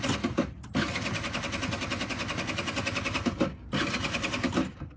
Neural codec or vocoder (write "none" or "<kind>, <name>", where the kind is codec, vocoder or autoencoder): none